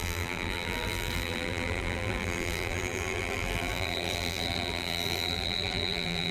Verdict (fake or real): fake